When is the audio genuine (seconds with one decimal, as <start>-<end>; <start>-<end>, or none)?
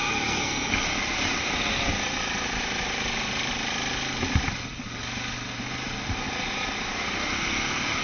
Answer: 0.7-8.0